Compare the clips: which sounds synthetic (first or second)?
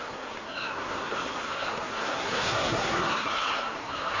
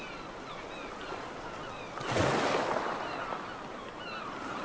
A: first